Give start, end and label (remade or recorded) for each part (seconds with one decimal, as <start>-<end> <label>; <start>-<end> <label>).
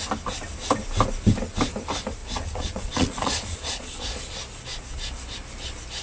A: 0.0-2.2 recorded; 2.2-4.2 remade; 4.2-6.0 recorded